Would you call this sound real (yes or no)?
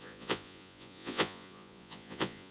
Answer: no